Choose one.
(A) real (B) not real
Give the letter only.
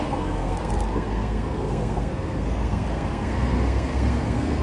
B